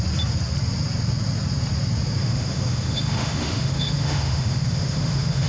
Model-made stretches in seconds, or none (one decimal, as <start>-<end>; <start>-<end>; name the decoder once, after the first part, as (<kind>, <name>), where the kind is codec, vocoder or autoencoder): 2.2-5.5 (autoencoder, DAC-VAE)